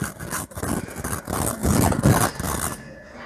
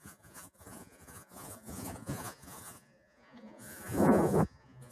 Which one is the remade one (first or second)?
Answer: second